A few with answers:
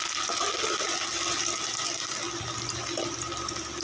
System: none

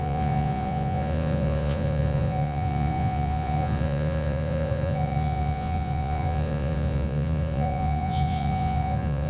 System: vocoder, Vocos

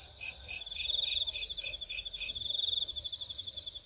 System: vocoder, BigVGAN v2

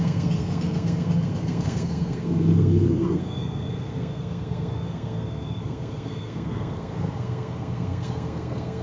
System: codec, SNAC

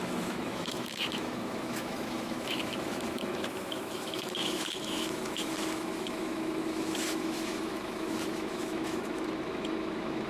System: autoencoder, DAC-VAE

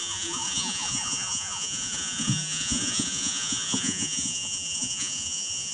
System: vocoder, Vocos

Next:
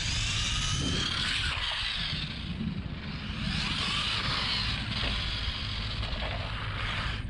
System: none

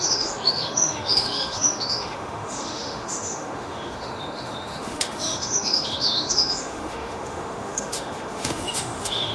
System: autoencoder, DAC-VAE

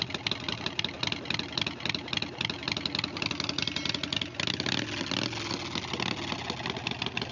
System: none